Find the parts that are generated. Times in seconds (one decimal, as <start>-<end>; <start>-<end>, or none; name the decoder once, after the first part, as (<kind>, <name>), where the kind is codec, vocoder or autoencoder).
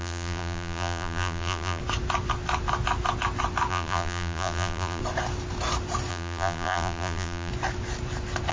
0.0-1.8 (vocoder, BigVGAN v2); 3.7-5.0; 6.1-7.5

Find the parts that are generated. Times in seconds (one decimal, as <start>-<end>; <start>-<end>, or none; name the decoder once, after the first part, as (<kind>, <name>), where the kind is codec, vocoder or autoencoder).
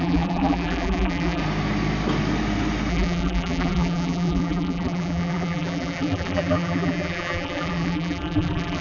0.0-1.4 (vocoder, BigVGAN v2); 2.9-8.8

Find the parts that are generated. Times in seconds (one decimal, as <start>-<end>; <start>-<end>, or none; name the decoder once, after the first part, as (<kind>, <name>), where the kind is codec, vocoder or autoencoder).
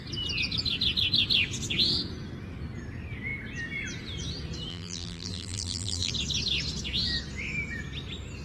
4.7-6.1 (vocoder, BigVGAN v2)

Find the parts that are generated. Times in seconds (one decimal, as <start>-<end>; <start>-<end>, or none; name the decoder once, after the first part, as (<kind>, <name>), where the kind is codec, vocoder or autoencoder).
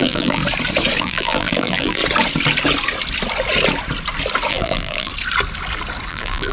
0.0-0.4 (vocoder, BigVGAN v2); 1.0-2.0; 4.5-5.1; 6.1-6.5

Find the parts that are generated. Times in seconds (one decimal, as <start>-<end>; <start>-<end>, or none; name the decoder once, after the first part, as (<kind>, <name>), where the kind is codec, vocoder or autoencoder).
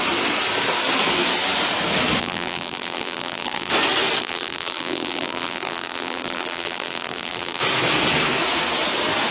2.2-3.7 (vocoder, BigVGAN v2); 4.2-7.6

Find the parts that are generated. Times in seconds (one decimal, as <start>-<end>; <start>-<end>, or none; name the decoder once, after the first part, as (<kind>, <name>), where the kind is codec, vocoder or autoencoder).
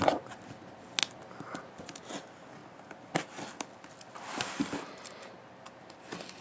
none